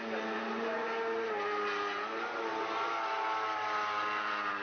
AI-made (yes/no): no